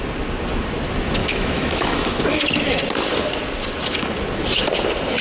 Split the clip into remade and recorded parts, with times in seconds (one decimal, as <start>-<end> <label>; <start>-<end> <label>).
0.0-1.2 recorded; 1.2-2.2 remade; 2.2-5.2 recorded